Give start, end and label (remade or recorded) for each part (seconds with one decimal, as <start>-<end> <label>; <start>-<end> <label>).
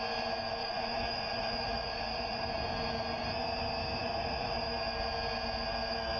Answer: 0.0-0.6 recorded; 0.6-2.4 remade; 2.4-4.0 recorded; 4.0-4.6 remade; 4.6-6.2 recorded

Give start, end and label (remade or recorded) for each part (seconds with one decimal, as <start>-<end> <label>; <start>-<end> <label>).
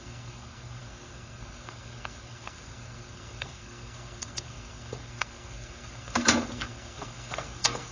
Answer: 0.0-7.9 remade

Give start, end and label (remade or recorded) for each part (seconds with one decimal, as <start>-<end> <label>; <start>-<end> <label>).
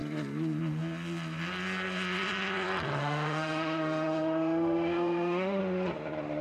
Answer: 0.0-3.0 recorded; 3.0-5.6 remade; 5.6-6.4 recorded